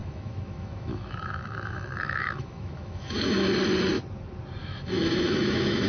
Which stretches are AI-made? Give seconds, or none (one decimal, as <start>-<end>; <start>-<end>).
0.0-3.5; 4.6-5.9